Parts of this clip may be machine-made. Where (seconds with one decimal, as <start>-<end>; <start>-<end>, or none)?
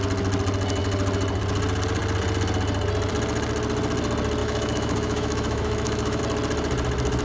4.4-6.2